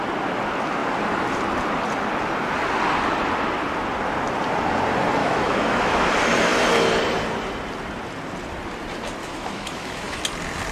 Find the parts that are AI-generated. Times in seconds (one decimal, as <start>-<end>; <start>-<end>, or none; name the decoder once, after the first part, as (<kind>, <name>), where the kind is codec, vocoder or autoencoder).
5.2-6.1 (autoencoder, DAC-VAE); 9.2-10.2